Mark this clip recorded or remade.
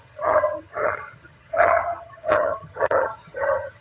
remade